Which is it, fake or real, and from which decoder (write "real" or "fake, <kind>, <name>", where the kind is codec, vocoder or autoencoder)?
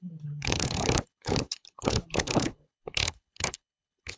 fake, codec, HILCodec